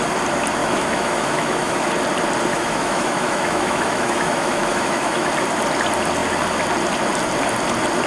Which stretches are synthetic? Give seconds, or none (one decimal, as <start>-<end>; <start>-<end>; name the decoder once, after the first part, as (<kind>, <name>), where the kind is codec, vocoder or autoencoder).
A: 0.6-1.9 (autoencoder, DAC-VAE); 2.5-5.3